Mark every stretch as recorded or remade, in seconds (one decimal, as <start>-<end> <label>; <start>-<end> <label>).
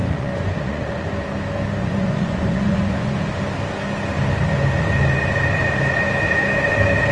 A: 0.0-1.1 remade; 1.1-1.8 recorded; 1.8-3.2 remade; 3.2-7.1 recorded